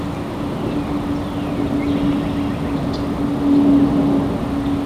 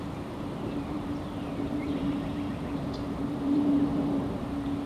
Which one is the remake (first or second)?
second